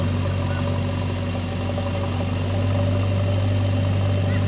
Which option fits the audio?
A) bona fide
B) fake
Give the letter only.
A